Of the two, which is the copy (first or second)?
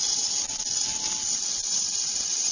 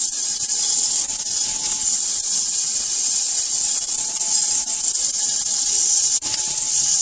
second